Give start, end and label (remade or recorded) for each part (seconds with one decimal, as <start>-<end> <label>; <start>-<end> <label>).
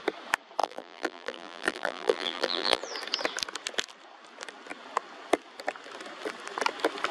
0.0-0.6 recorded; 0.6-2.8 remade; 2.8-7.1 recorded